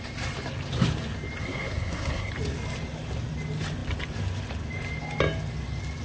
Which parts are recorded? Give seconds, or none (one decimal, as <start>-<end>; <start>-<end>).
0.0-1.4; 2.3-6.0